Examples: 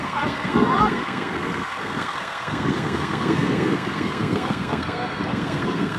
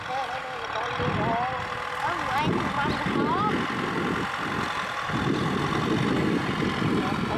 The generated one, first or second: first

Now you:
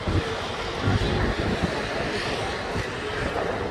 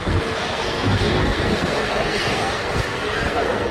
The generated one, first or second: second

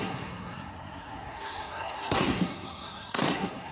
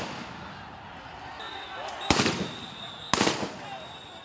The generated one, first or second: first